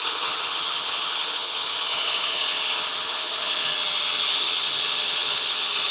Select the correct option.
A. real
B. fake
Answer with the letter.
B